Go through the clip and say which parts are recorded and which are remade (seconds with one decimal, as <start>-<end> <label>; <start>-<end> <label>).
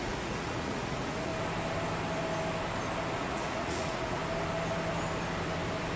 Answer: 0.0-1.3 remade; 1.3-3.2 recorded; 3.2-4.2 remade; 4.2-6.0 recorded